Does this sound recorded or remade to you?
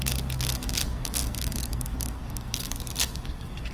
remade